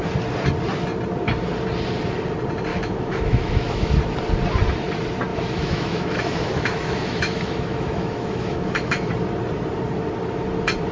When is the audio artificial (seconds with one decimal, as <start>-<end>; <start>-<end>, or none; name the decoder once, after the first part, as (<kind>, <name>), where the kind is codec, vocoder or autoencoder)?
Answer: 2.7-3.9 (autoencoder, DAC-VAE); 5.3-9.1

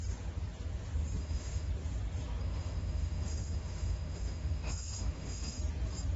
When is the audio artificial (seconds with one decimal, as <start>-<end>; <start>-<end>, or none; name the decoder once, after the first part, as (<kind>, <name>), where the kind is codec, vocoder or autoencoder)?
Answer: 1.2-1.7 (autoencoder, DAC-VAE); 2.4-5.6

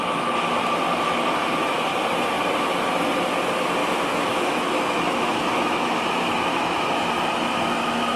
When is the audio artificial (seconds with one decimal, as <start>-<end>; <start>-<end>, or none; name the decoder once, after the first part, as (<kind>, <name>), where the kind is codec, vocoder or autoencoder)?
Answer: 3.8-6.8 (autoencoder, DAC-VAE)